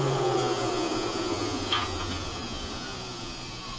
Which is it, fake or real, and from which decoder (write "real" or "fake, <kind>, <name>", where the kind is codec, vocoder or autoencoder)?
fake, vocoder, Vocos